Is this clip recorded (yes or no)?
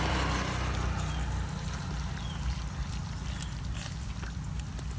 yes